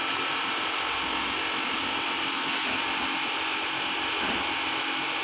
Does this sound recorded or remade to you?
recorded